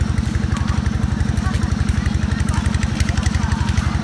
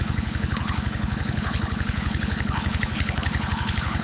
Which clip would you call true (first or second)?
first